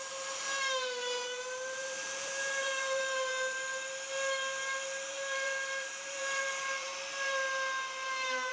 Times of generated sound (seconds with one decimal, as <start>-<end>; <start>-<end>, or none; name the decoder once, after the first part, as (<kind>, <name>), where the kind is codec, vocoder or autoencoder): 0.0-3.7 (vocoder, BigVGAN v2); 5.1-6.9